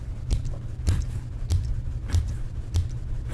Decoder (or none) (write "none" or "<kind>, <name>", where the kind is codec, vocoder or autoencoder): vocoder, BigVGAN v2